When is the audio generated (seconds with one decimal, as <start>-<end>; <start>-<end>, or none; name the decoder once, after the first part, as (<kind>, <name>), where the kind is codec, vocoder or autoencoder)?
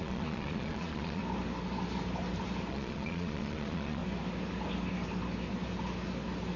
0.0-1.2 (vocoder, Vocos); 2.7-4.0